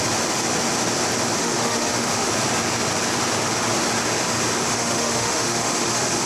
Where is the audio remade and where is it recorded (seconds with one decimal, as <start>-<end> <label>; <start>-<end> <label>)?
0.0-1.4 recorded; 1.4-2.3 remade; 2.3-4.7 recorded; 4.7-6.3 remade